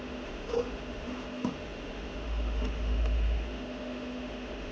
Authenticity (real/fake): fake